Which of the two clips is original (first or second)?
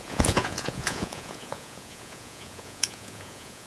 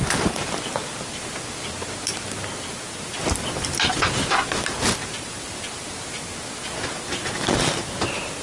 second